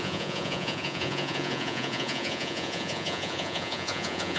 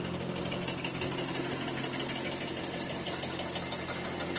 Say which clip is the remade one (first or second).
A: first